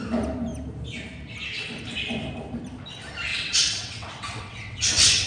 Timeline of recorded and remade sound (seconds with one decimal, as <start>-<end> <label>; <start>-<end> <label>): 0.0-3.3 recorded; 3.3-5.3 remade

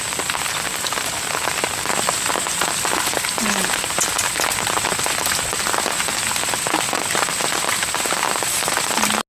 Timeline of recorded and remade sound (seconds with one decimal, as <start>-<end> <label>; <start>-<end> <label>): 0.0-9.3 recorded

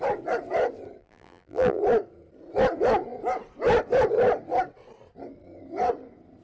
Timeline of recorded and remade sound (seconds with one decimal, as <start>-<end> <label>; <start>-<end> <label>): 0.0-1.0 recorded; 1.0-1.8 remade; 1.8-6.4 recorded

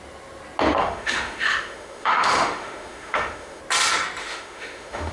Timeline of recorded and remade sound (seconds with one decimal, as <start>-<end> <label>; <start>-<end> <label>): 0.0-0.8 recorded; 0.8-3.6 remade; 3.6-4.2 recorded; 4.2-5.1 remade

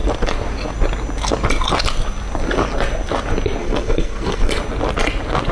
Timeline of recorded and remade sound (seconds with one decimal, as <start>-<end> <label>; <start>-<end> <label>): 0.0-3.6 recorded; 3.6-4.6 remade; 4.6-5.5 recorded

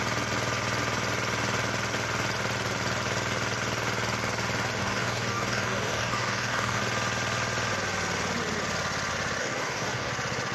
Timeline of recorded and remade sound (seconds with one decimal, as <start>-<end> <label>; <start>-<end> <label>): 0.0-4.8 recorded; 4.8-6.8 remade; 6.8-9.4 recorded; 9.4-10.1 remade; 10.1-10.5 recorded

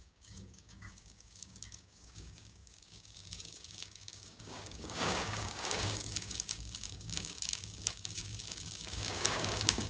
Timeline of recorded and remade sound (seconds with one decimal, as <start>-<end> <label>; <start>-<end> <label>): 0.0-9.9 remade

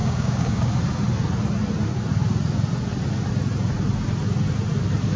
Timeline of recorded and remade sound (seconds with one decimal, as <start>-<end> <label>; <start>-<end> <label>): 0.0-0.7 remade; 0.7-5.2 recorded